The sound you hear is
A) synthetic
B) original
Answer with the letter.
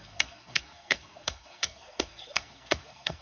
A